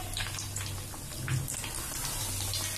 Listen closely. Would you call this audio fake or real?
real